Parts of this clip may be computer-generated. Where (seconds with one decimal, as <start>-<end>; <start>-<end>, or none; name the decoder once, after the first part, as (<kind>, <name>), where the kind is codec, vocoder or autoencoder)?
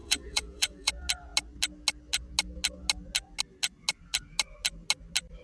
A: 0.0-0.9 (vocoder, Vocos)